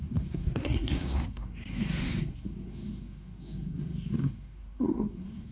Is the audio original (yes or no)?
no